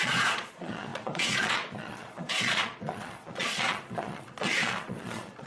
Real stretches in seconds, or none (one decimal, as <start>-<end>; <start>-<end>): none